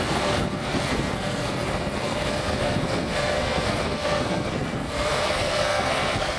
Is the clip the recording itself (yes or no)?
no